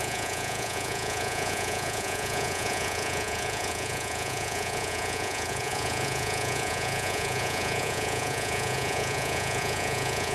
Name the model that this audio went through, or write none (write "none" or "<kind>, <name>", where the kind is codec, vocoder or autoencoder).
vocoder, Vocos